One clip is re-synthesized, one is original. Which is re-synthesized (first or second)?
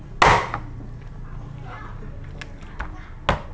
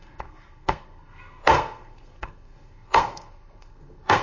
second